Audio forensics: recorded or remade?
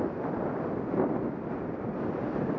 recorded